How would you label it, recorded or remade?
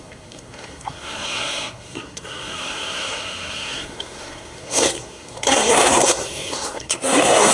remade